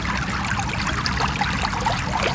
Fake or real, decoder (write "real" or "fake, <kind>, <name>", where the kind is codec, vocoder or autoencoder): real